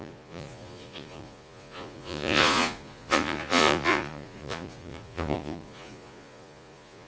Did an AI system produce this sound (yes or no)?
yes